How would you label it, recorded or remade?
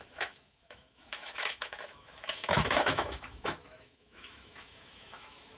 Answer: remade